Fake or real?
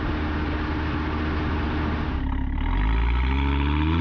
real